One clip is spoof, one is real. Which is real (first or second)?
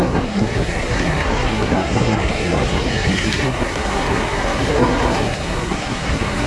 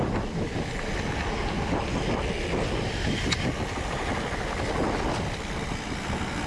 second